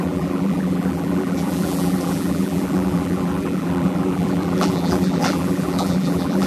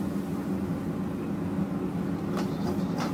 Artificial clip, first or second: first